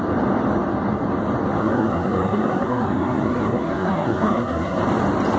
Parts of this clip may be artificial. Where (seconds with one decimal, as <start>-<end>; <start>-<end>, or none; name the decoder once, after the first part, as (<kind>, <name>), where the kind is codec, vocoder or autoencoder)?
1.6-4.8 (codec, SNAC)

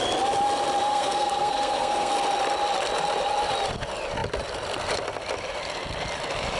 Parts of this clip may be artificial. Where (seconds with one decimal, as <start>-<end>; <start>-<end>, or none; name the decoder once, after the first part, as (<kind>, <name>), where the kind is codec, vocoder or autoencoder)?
0.9-2.1 (codec, SNAC)

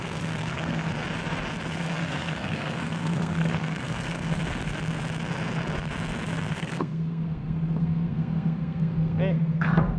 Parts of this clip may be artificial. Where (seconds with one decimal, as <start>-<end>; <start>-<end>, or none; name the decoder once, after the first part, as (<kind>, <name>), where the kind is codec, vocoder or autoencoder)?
0.0-0.9 (codec, SNAC); 1.7-4.4; 6.5-10.0

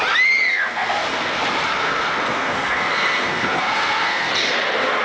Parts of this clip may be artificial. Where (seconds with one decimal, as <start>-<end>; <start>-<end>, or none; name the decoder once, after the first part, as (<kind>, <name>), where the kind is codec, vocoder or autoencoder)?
0.5-1.4 (codec, SNAC); 1.8-4.3

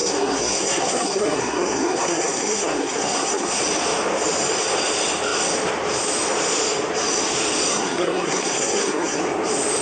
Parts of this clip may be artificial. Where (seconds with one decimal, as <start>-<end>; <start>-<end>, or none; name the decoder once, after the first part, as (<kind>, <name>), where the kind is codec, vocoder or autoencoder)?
0.0-3.6 (codec, SNAC); 7.7-9.2

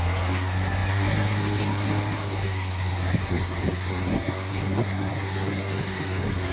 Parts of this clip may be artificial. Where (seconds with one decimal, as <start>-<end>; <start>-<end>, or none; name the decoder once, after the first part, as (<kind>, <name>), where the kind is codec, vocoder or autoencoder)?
0.0-6.5 (codec, SNAC)